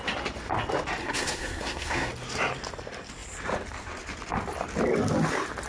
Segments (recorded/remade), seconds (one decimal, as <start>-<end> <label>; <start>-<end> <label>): 0.0-1.0 recorded; 1.0-2.1 remade; 2.1-5.7 recorded